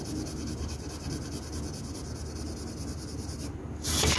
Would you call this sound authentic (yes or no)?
yes